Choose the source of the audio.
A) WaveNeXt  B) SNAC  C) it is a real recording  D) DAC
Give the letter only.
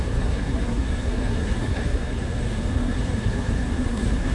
B